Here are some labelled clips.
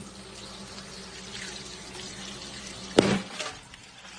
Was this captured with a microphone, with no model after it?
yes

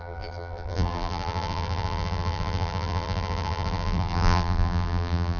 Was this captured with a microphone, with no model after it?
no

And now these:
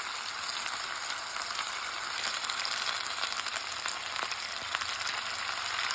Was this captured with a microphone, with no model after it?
yes